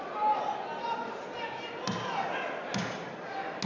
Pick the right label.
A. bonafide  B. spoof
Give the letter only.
A